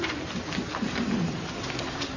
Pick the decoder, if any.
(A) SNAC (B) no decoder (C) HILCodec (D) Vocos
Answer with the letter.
B